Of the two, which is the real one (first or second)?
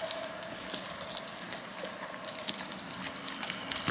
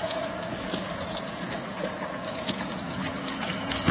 first